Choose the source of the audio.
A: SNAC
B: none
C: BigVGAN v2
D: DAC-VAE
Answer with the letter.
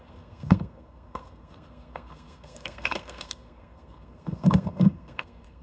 A